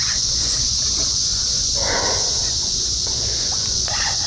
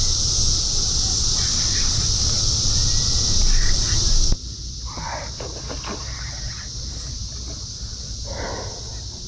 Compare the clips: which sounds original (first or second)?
second